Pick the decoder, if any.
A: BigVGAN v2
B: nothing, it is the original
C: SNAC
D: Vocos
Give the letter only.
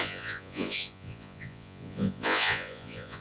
D